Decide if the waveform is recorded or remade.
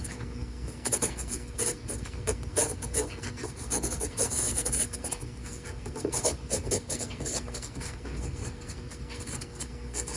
remade